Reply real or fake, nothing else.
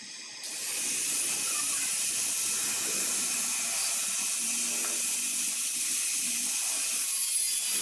real